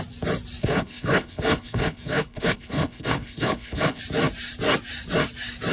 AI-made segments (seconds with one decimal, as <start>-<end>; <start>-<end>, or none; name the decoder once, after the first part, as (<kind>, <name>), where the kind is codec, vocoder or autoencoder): 0.6-4.0 (codec, HILCodec)

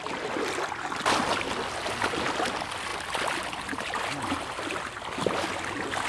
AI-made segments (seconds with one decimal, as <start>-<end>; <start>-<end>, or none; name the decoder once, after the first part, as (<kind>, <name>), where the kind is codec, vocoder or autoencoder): none